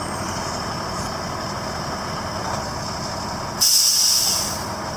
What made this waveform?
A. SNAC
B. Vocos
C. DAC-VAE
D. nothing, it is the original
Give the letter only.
D